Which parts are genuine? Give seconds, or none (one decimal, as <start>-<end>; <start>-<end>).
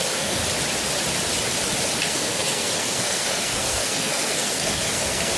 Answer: 0.4-2.0